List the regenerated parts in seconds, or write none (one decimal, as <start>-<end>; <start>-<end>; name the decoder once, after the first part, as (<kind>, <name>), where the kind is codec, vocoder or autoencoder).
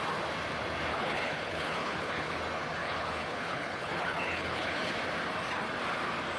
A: 0.9-2.4 (codec, HILCodec); 2.8-4.9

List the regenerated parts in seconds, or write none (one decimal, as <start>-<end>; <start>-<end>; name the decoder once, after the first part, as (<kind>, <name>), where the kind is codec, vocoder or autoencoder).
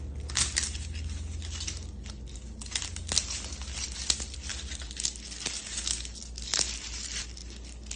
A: none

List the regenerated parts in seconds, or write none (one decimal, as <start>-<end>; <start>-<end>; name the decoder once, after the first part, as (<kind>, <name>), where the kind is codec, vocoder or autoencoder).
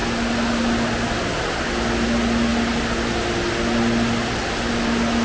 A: none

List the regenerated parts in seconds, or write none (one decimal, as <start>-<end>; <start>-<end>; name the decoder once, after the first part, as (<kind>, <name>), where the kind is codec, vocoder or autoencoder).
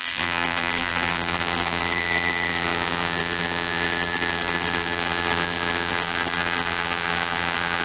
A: 0.0-7.8 (vocoder, BigVGAN v2)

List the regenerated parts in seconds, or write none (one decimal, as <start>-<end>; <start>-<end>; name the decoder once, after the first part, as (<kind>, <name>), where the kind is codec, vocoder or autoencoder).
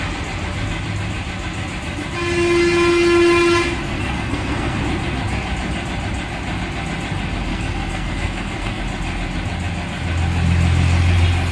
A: 3.9-4.8 (codec, SNAC); 7.5-8.8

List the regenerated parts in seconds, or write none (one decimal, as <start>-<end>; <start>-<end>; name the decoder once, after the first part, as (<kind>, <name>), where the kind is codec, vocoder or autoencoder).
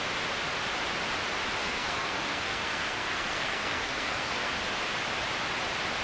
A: 1.6-4.5 (codec, SNAC)